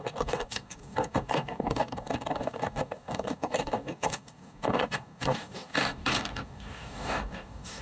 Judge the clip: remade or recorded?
remade